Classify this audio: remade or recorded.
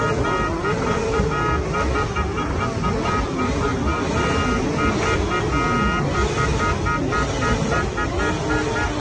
recorded